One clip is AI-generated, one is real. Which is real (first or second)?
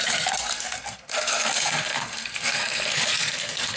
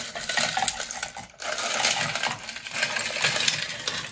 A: second